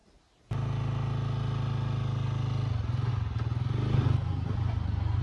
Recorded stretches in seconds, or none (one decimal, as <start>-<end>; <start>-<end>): 0.0-5.2